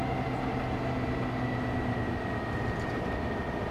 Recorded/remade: recorded